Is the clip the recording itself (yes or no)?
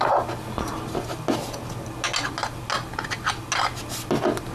yes